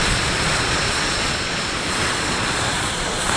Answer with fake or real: fake